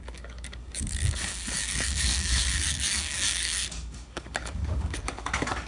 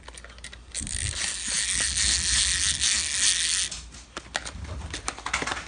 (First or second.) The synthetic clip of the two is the first